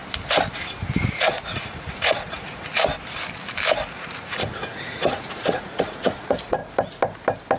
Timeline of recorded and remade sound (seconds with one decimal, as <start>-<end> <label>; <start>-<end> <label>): 0.0-1.1 recorded; 1.1-2.9 remade; 2.9-3.9 recorded; 3.9-6.6 remade; 6.6-7.6 recorded